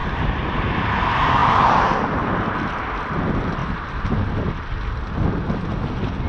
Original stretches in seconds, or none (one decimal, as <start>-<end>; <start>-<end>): 0.9-1.4; 2.5-3.6; 4.1-6.3

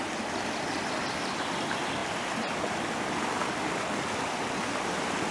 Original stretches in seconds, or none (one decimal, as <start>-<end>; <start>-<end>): 0.0-5.3

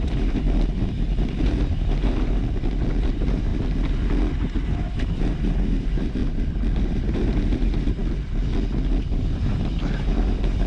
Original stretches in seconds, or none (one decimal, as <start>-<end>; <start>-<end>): 2.4-3.1; 3.5-4.3; 6.2-6.8; 8.0-9.0

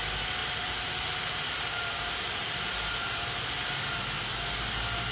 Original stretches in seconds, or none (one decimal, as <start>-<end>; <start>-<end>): 0.0-0.4; 3.5-5.1

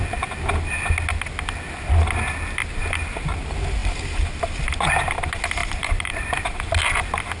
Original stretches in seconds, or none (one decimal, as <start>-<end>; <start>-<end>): 0.0-5.6; 6.6-7.4

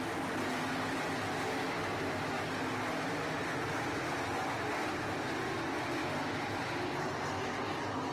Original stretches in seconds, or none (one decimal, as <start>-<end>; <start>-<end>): 0.0-6.0; 7.0-8.1